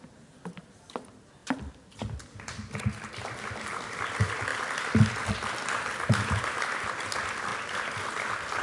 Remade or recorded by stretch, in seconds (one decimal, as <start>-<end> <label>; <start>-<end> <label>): 0.0-8.6 recorded